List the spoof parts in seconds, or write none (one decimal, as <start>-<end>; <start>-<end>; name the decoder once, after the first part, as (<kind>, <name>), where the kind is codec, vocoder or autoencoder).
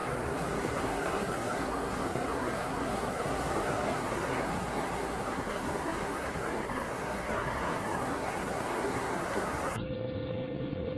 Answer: 0.0-11.0 (codec, SNAC)